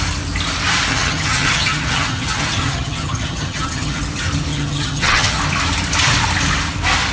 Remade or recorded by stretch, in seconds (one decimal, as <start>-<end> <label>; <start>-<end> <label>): 0.0-0.9 recorded; 0.9-4.0 remade; 4.0-4.5 recorded; 4.5-5.4 remade; 5.4-7.1 recorded